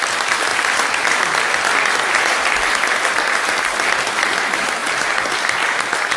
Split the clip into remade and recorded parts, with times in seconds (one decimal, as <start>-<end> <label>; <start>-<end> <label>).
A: 0.0-6.2 recorded